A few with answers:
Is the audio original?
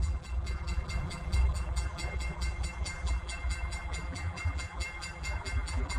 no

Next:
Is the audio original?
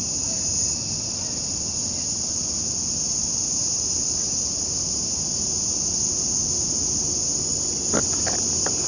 yes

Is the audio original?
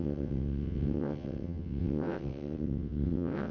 no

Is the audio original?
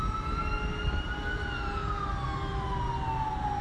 yes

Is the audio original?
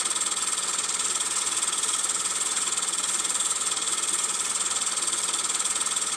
no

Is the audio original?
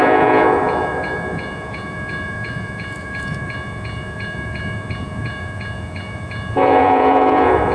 no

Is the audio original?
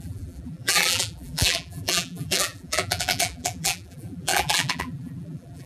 no